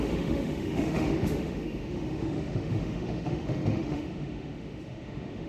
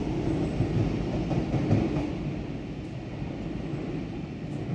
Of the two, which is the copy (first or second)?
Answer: first